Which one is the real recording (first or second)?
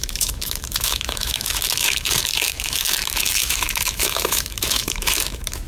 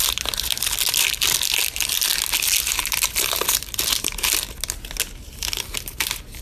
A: second